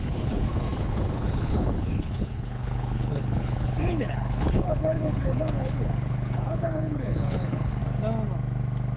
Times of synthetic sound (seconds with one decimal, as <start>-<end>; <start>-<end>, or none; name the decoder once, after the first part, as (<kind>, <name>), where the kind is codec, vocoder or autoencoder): 0.0-7.8 (codec, HILCodec)